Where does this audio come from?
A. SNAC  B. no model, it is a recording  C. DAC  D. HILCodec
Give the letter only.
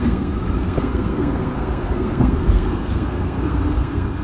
A